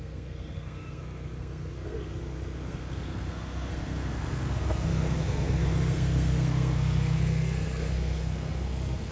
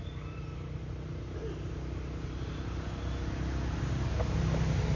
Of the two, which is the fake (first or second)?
first